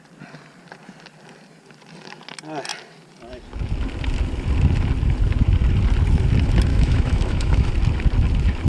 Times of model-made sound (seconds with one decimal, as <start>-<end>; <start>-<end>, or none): 6.7-7.7